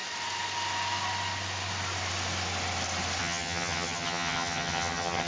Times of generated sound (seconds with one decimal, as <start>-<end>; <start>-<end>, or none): 3.2-5.3